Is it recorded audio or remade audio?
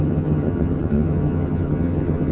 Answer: remade